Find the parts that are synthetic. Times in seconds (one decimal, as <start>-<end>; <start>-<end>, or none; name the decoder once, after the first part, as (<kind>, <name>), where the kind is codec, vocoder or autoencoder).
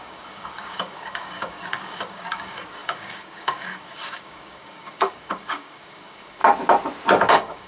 0.0-6.4 (codec, DAC); 7.3-7.7